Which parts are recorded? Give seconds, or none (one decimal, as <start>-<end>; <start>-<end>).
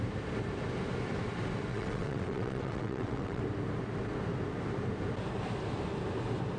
0.0-1.7; 3.4-6.6